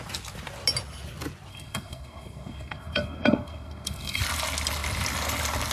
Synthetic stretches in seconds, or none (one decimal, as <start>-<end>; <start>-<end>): 1.5-4.2